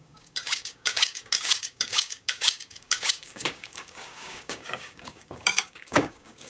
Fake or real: fake